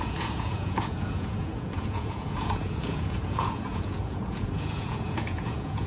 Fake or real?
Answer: fake